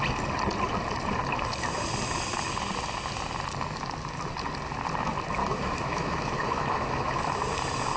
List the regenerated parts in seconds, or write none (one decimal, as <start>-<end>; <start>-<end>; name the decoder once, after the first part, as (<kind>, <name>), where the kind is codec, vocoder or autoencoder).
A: 5.4-7.2 (autoencoder, DAC-VAE)